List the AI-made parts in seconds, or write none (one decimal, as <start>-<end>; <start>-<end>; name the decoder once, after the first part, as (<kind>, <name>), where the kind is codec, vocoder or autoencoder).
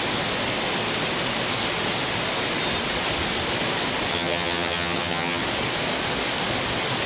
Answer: 4.1-5.4 (vocoder, HiFi-GAN)